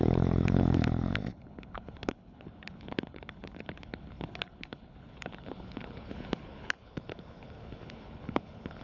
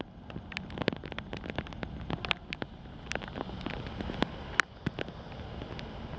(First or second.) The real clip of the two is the second